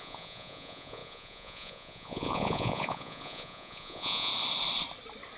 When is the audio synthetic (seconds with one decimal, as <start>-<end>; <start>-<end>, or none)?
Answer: 0.0-4.3